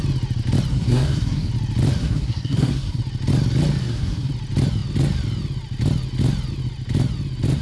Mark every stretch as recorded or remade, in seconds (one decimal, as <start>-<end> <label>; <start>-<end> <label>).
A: 0.0-0.7 recorded; 0.7-1.5 remade; 1.5-2.0 recorded; 2.0-3.0 remade; 3.0-3.8 recorded; 3.8-4.3 remade; 4.3-7.6 recorded